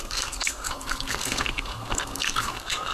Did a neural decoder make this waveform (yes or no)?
yes